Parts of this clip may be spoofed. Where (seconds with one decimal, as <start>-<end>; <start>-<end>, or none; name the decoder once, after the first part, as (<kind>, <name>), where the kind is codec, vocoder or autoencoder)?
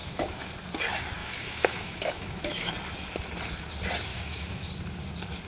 0.0-0.5 (autoencoder, DAC-VAE); 1.2-2.7; 4.1-4.7